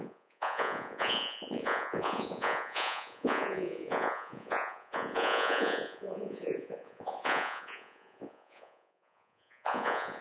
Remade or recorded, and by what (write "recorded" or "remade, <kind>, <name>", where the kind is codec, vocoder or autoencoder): remade, vocoder, Vocos